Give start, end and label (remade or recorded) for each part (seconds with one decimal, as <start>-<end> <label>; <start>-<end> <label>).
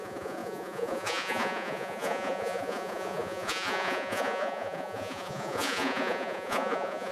0.0-7.1 remade